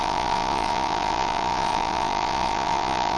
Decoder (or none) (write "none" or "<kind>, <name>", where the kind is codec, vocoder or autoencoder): vocoder, Vocos